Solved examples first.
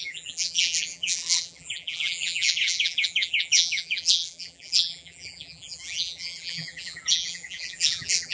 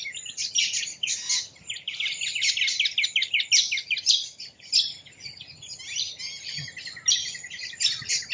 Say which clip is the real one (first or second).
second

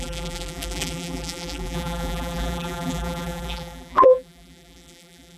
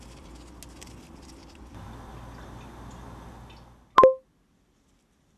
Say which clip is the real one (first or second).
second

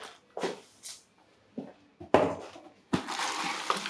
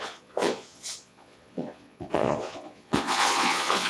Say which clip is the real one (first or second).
first